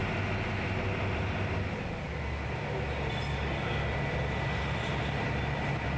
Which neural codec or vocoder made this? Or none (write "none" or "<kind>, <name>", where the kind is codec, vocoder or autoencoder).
none